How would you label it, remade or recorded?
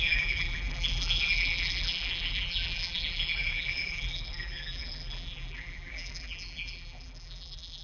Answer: remade